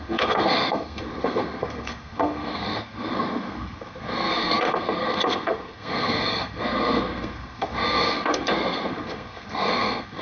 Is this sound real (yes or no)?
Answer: no